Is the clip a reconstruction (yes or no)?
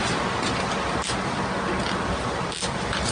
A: no